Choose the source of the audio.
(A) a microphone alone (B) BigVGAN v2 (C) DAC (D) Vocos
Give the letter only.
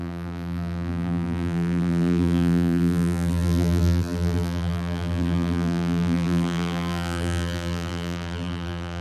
B